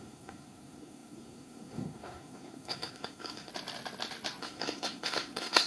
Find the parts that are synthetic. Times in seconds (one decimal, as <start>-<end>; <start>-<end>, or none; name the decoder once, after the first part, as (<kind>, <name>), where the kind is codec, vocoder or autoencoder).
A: 0.0-3.5 (codec, SNAC); 4.4-5.7